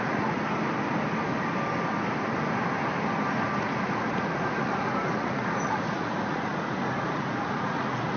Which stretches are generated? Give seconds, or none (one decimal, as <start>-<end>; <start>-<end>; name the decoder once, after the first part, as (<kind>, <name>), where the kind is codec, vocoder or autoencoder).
0.0-0.4 (vocoder, Vocos); 3.6-8.2